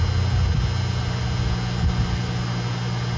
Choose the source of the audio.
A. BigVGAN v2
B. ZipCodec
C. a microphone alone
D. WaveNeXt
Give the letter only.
C